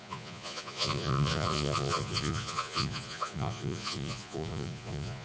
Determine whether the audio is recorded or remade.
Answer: remade